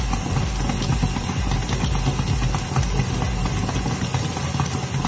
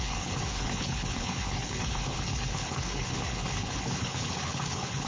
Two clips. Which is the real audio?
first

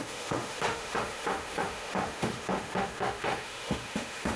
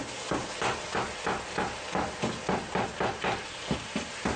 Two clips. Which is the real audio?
second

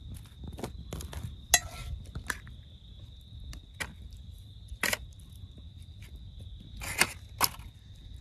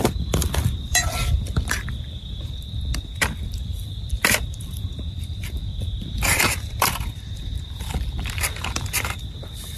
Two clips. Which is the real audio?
first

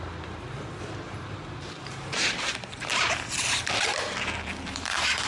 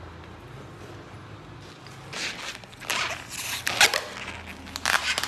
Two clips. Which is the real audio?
second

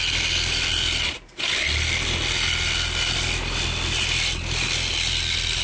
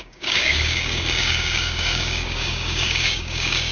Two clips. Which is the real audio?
first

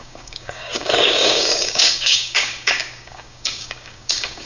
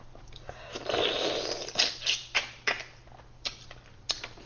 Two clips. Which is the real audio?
second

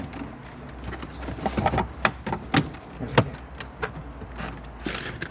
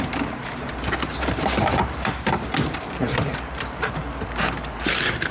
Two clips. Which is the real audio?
first